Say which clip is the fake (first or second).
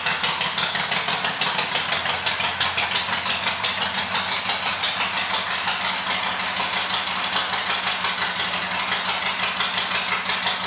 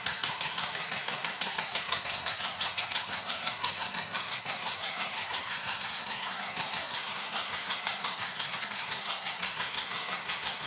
second